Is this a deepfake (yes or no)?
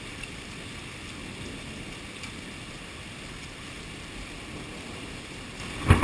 no